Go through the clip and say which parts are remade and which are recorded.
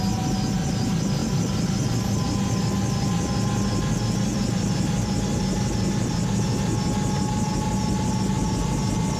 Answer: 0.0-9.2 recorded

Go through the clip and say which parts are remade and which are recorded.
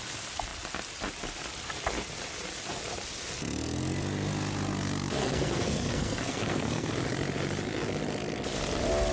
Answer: 0.0-5.2 recorded; 5.2-6.9 remade; 6.9-9.1 recorded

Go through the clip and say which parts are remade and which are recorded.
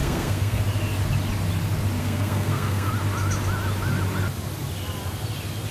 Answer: 0.0-0.6 remade; 0.6-2.0 recorded; 2.0-2.9 remade; 2.9-5.7 recorded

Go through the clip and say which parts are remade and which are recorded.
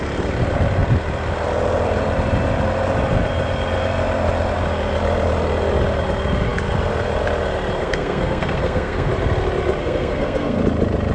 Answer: 0.0-7.8 recorded; 7.8-9.1 remade; 9.1-9.8 recorded; 9.8-10.6 remade; 10.6-11.1 recorded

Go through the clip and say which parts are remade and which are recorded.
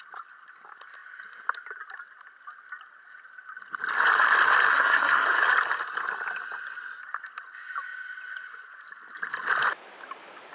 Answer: 0.0-4.7 recorded; 4.7-5.4 remade; 5.4-10.5 recorded